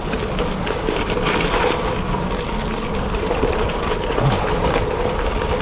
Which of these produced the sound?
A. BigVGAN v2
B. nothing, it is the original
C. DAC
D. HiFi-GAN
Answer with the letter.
B